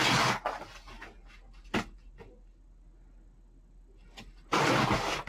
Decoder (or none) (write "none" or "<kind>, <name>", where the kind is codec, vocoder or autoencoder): none